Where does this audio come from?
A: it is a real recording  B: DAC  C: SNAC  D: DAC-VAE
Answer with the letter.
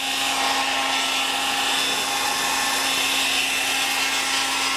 A